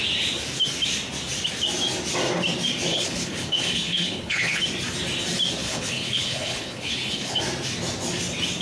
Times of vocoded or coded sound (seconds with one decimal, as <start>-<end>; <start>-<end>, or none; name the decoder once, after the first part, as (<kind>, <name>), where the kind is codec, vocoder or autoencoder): 2.9-4.6 (codec, HILCodec); 5.6-7.4